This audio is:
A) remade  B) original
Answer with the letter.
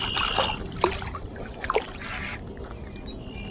B